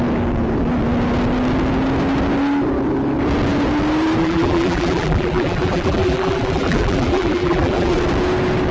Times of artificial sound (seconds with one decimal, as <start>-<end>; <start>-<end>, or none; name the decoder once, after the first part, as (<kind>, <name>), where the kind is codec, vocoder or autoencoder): 4.2-8.0 (vocoder, BigVGAN v2)